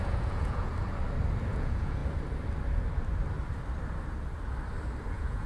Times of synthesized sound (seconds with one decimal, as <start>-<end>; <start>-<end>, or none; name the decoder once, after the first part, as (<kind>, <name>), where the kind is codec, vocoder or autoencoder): 0.0-0.7 (vocoder, Vocos); 1.5-2.0; 5.1-5.5